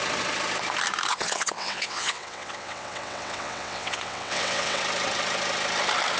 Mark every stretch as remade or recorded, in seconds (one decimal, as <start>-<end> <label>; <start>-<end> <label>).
0.0-1.1 recorded; 1.1-4.8 remade; 4.8-6.2 recorded